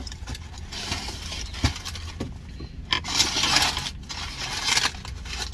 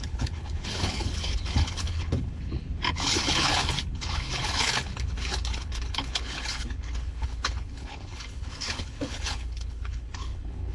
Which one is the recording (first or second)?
first